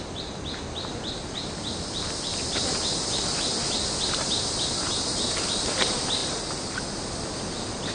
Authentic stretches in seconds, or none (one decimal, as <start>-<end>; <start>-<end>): 0.0-7.9